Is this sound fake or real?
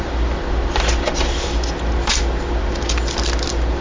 fake